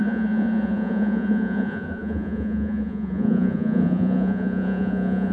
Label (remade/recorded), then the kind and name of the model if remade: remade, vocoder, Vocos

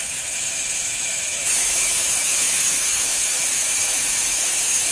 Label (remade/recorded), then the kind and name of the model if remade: remade, autoencoder, DAC-VAE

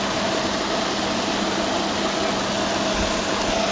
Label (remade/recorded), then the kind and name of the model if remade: recorded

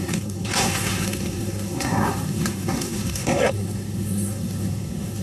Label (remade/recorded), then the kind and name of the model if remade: remade, codec, SNAC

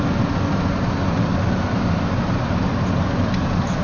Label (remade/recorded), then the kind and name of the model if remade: recorded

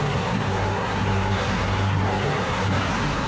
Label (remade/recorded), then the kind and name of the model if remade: remade, codec, SNAC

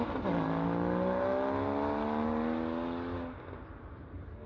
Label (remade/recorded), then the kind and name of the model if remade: recorded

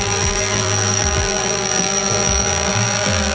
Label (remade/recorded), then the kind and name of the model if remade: remade, vocoder, BigVGAN v2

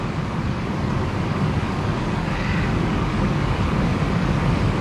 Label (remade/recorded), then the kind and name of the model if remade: remade, codec, DAC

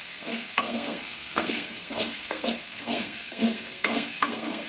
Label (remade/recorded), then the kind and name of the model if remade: remade, codec, SNAC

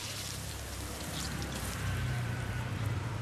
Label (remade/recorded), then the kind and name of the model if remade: remade, vocoder, BigVGAN v2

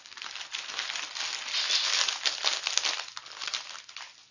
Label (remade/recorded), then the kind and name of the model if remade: recorded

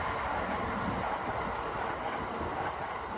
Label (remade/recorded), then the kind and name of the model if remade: recorded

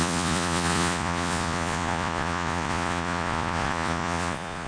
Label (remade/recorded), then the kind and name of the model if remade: remade, vocoder, Vocos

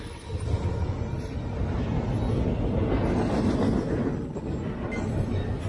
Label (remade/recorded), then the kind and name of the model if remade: recorded